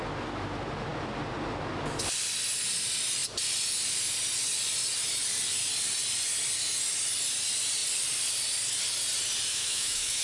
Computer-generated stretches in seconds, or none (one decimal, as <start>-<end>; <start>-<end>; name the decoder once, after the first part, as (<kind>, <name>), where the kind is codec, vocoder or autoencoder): 9.5-10.2 (autoencoder, DAC-VAE)